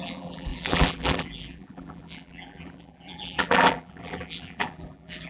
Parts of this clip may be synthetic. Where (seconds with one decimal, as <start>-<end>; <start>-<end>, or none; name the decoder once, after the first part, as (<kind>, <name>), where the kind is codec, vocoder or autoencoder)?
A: 0.0-5.3 (vocoder, BigVGAN v2)